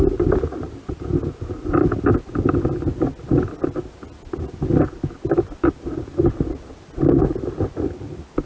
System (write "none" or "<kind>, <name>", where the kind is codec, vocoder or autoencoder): none